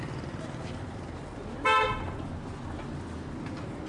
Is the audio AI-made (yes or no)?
no